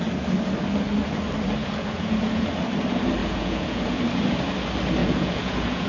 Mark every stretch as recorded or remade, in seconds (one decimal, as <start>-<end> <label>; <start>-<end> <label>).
0.0-1.6 recorded; 1.6-2.6 remade; 2.6-3.2 recorded; 3.2-4.0 remade; 4.0-5.0 recorded; 5.0-5.9 remade